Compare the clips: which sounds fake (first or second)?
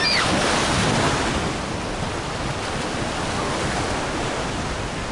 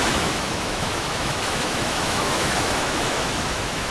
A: second